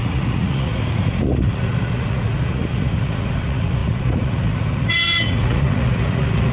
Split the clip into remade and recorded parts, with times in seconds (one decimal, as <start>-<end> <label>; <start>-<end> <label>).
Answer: 0.0-6.5 remade